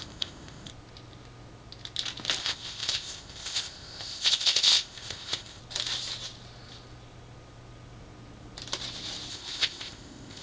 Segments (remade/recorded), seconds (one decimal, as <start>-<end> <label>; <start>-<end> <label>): 0.0-0.7 remade; 0.7-2.4 recorded; 2.4-5.6 remade; 5.6-9.3 recorded; 9.3-10.4 remade